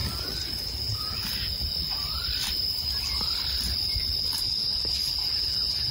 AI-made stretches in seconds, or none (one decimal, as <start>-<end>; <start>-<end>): 0.0-0.6; 1.7-4.5